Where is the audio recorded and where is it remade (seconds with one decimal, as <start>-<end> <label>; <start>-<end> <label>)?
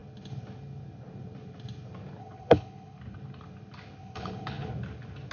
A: 0.0-2.2 recorded; 2.2-3.0 remade; 3.0-4.0 recorded; 4.0-4.7 remade; 4.7-5.3 recorded